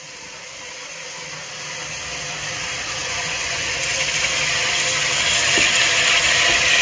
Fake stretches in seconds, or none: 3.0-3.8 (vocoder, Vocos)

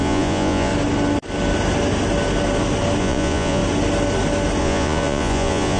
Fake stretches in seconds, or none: 0.0-0.7 (vocoder, Vocos); 3.0-3.6; 4.6-5.8

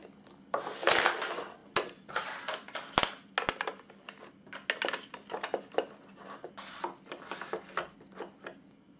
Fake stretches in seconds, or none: none

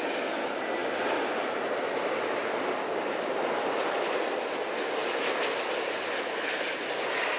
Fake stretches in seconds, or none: none